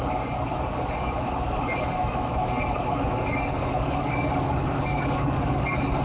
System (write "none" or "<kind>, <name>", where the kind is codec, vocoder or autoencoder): codec, DAC